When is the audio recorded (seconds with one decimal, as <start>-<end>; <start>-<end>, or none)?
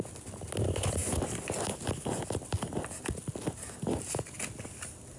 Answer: 0.0-5.2